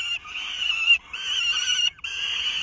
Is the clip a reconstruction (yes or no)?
no